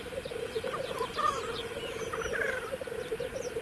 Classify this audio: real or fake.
real